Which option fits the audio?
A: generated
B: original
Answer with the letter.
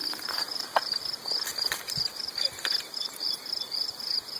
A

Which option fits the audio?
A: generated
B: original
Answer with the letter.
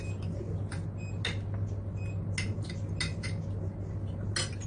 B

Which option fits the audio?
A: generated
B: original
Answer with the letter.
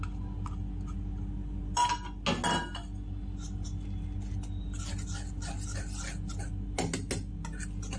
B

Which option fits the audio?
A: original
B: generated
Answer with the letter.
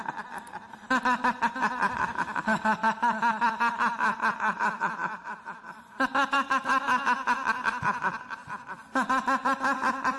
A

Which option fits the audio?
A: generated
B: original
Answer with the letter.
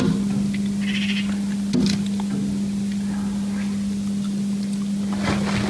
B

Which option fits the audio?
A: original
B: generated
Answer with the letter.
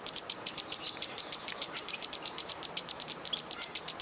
B